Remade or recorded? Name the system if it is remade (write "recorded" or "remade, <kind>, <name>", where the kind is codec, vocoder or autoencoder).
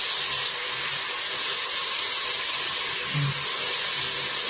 recorded